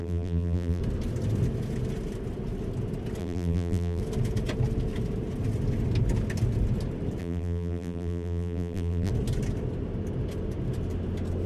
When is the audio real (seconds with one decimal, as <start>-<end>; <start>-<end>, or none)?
0.8-3.2; 4.0-7.2; 9.1-11.5